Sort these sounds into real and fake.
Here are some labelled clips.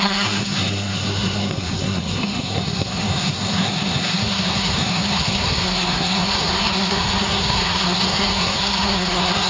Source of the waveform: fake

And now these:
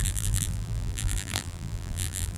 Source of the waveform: fake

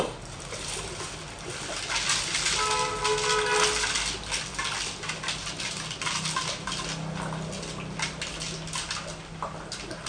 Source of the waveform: real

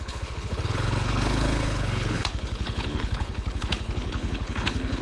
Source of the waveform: fake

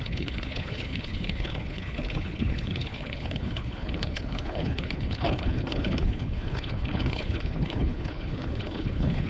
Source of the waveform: fake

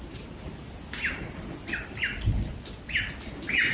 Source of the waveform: real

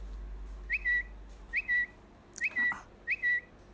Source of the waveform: real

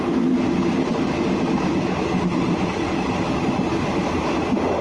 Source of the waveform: real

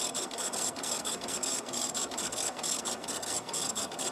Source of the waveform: fake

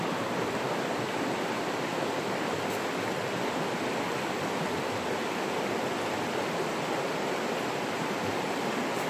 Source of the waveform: real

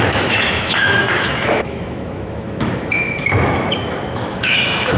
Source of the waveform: fake